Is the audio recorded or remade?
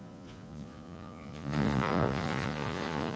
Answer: remade